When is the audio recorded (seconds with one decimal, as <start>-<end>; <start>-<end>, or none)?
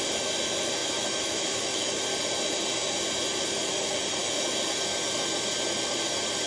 0.0-0.8; 2.0-6.5